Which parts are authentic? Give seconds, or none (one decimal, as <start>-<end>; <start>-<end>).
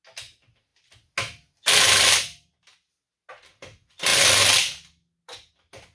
0.0-5.9